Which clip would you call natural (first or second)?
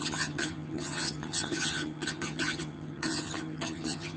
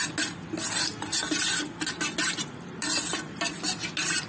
second